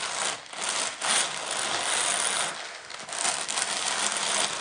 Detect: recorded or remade recorded